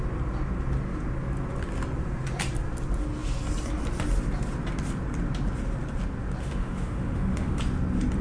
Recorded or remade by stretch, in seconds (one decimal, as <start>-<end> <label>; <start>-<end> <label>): 0.0-6.4 recorded; 6.4-7.6 remade; 7.6-8.2 recorded